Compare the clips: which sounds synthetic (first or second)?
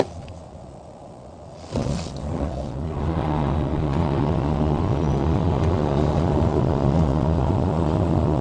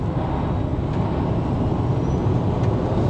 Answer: first